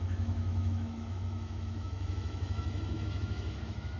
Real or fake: fake